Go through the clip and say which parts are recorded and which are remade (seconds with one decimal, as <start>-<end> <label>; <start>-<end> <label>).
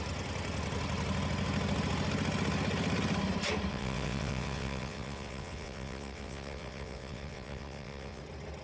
0.0-3.7 recorded; 3.7-8.2 remade; 8.2-8.6 recorded